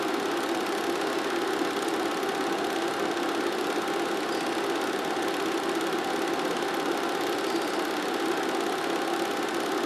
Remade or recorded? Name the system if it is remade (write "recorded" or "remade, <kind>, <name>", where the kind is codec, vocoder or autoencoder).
recorded